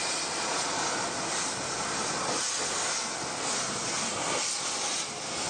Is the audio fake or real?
real